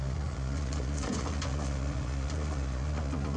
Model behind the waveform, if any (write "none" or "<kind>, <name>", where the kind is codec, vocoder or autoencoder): vocoder, Vocos